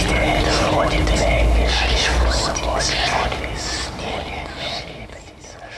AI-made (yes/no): no